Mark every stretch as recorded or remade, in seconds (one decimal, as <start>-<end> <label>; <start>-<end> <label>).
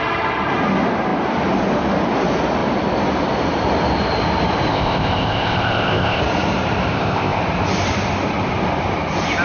0.0-4.7 recorded; 4.7-6.2 remade; 6.2-6.9 recorded; 6.9-7.4 remade; 7.4-9.4 recorded